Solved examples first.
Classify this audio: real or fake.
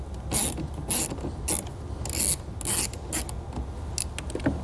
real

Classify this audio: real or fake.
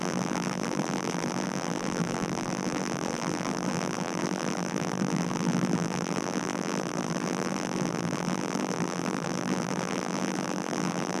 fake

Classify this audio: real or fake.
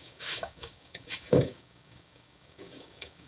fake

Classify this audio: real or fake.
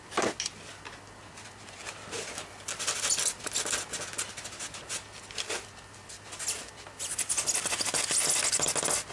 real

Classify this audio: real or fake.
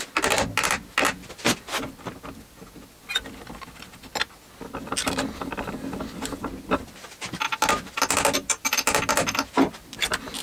real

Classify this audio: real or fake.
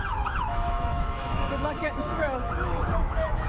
fake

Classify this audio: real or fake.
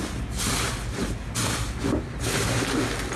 real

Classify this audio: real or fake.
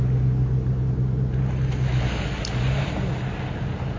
real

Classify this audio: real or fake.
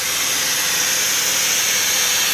real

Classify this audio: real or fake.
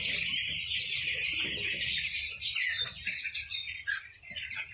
real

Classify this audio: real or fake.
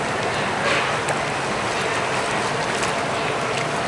real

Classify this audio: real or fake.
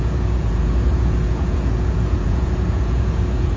fake